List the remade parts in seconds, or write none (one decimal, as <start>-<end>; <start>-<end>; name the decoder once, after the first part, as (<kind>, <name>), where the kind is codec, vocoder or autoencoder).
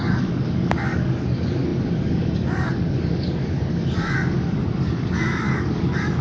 0.0-6.2 (codec, DAC)